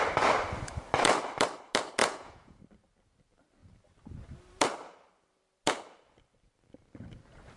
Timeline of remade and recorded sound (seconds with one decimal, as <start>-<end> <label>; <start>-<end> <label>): 0.0-2.0 recorded; 2.0-2.6 remade; 2.6-7.6 recorded